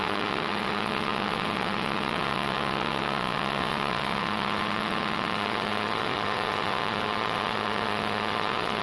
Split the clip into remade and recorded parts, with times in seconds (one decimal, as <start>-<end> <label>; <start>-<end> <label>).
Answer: 0.0-8.8 remade